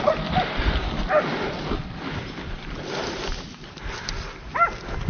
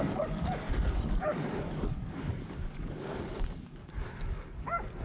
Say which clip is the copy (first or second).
second